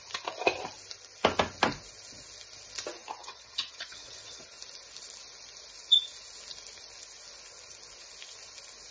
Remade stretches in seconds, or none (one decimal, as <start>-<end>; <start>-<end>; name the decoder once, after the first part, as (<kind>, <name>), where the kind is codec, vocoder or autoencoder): 3.2-4.4 (vocoder, WaveNeXt)